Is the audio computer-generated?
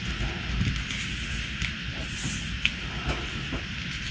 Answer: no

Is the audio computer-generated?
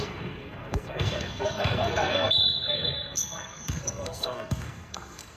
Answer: yes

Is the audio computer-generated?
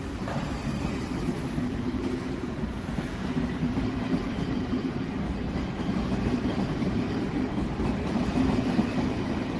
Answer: yes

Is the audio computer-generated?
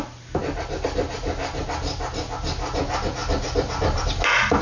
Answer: no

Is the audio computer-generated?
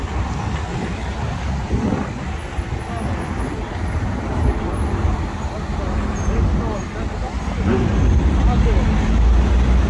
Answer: no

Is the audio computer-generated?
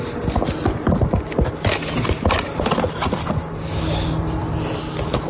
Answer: no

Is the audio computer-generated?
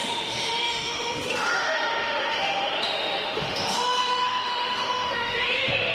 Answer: yes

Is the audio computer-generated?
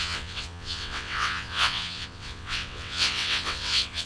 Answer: yes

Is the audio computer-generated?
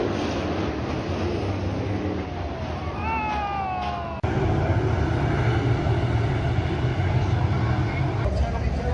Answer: no